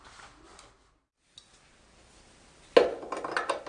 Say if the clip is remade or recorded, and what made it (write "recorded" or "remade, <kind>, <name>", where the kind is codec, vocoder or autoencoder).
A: recorded